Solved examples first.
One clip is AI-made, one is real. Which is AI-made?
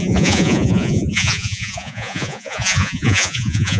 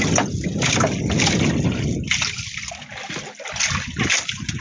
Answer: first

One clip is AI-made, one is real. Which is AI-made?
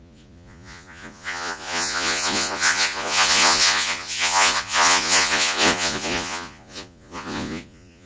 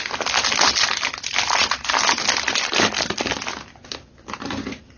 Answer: first